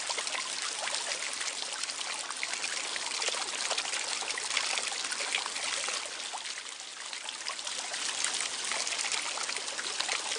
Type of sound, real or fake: real